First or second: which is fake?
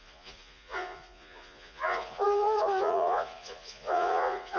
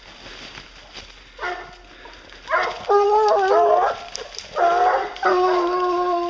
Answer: first